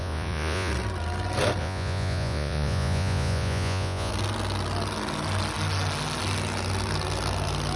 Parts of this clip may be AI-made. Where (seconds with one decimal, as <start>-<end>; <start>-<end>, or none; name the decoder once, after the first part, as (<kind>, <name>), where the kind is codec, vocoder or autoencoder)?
0.0-0.7 (vocoder, Vocos); 1.6-4.1

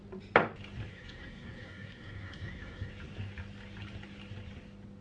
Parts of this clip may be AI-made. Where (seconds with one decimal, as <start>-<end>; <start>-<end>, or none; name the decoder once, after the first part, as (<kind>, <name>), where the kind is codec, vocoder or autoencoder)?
0.9-2.9 (codec, SNAC)

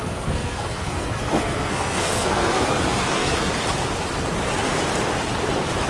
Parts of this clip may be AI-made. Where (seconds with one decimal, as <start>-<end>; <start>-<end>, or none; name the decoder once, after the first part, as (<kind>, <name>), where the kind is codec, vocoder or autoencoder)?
0.0-3.5 (codec, SNAC)

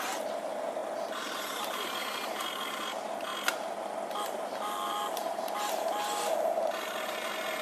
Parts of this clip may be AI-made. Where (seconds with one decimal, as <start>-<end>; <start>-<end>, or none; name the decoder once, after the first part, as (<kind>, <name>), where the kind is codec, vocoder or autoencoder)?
none